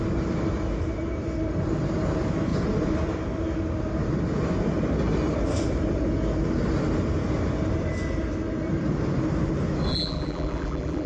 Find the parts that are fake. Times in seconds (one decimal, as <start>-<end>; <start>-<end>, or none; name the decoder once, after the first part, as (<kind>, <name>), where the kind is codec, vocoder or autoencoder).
9.9-11.1 (vocoder, BigVGAN v2)